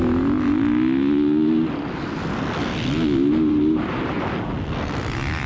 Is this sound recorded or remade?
recorded